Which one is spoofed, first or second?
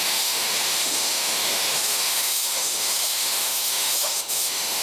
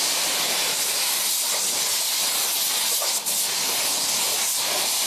first